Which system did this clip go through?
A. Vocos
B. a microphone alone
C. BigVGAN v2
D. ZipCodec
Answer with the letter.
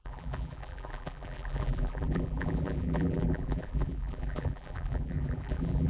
C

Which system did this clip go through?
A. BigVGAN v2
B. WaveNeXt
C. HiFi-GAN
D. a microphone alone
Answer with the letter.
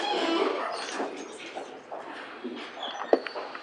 D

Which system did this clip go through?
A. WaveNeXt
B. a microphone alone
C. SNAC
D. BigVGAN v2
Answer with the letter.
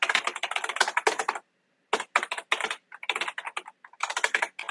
B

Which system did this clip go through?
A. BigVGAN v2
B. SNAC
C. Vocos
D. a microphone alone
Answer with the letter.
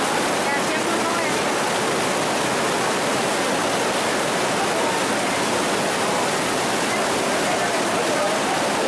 D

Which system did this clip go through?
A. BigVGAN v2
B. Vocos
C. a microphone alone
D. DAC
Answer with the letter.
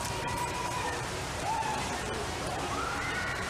A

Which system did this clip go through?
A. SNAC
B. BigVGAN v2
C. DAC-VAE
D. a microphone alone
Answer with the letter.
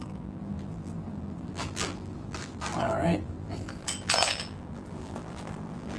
B